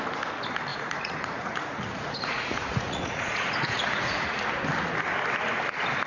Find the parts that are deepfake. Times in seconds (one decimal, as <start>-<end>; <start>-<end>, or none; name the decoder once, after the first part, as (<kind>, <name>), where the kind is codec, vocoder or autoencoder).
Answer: 0.7-4.4 (vocoder, Vocos)